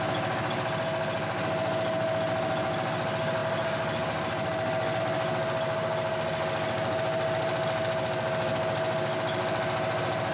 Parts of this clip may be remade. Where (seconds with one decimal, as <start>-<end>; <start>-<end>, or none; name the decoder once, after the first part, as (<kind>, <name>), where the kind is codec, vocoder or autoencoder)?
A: none